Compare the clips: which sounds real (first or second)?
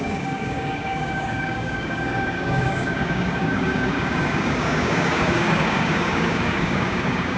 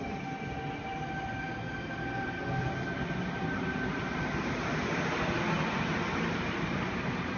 second